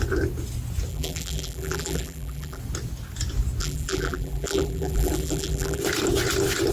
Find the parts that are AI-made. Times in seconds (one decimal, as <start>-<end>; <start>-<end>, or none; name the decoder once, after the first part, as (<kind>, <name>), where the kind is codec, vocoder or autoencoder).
0.9-2.6 (vocoder, BigVGAN v2); 3.6-5.8